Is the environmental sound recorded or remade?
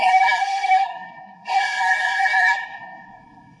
remade